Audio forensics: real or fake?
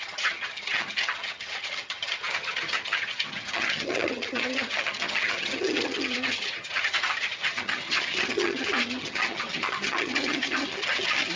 fake